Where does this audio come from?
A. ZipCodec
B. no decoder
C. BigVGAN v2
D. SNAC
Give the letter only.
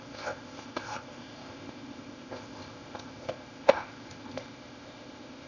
A